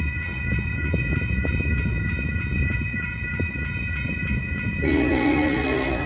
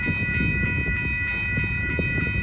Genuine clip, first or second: second